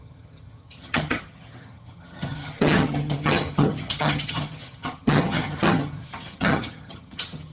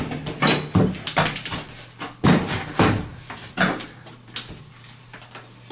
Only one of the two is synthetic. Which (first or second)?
first